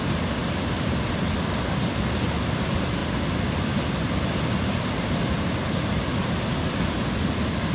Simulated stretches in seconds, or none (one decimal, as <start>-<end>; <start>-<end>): 0.4-1.1